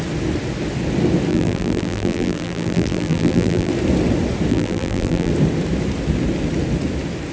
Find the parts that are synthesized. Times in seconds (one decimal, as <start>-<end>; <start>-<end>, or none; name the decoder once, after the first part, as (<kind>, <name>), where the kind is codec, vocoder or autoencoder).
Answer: 1.3-3.7 (vocoder, BigVGAN v2); 4.5-5.3